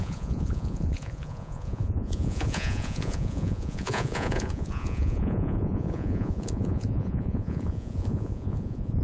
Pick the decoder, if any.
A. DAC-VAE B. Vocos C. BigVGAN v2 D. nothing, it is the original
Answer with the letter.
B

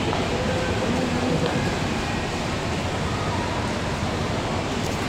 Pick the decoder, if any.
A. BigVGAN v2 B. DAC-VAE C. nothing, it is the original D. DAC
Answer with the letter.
C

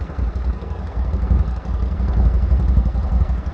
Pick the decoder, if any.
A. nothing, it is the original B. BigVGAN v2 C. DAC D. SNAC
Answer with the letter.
D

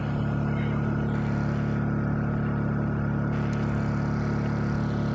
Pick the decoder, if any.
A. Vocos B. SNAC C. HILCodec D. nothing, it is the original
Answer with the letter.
D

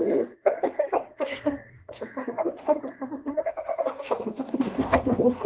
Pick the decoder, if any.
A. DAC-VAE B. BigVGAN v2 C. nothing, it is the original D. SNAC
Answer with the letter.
D